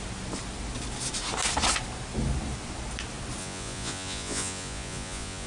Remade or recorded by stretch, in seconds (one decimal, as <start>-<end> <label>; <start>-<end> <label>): 0.0-3.4 recorded; 3.4-5.5 remade